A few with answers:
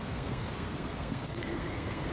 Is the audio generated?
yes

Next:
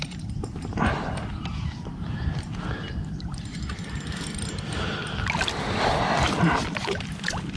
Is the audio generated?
no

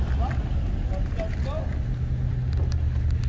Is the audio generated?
no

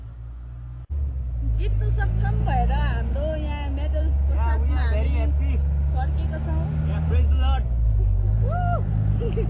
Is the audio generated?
no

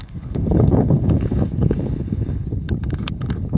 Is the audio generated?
yes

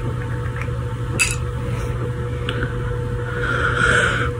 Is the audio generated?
no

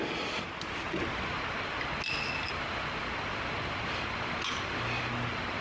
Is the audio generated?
no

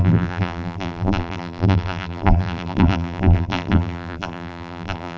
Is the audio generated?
yes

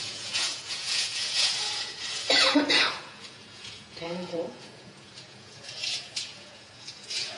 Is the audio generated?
yes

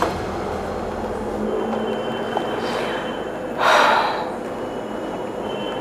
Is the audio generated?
no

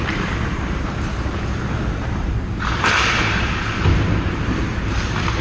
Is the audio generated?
yes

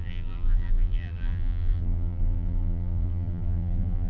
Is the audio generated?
yes